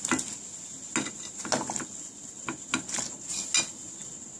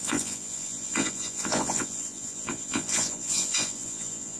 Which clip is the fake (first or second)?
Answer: second